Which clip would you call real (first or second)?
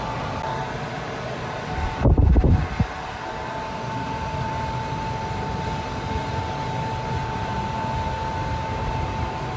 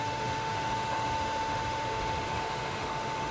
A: first